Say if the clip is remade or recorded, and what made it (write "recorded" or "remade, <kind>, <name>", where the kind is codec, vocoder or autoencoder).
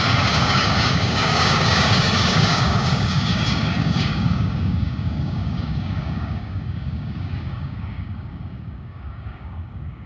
remade, codec, DAC